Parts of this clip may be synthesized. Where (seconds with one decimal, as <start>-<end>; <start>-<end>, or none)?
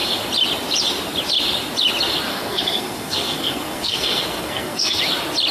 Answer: 2.3-5.0